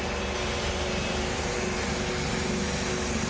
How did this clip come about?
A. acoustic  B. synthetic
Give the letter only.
A